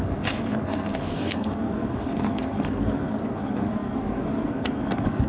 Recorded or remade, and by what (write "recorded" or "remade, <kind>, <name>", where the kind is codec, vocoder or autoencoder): remade, codec, SNAC